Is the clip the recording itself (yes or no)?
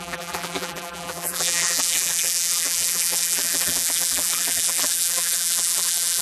no